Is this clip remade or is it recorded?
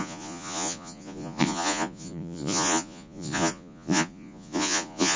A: remade